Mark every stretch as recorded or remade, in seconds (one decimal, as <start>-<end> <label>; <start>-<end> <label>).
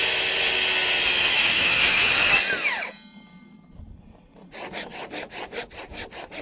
0.0-1.3 recorded; 1.3-2.1 remade; 2.1-6.4 recorded